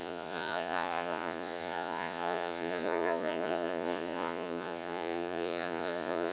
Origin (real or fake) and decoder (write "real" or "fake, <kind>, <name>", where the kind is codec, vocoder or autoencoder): fake, vocoder, Vocos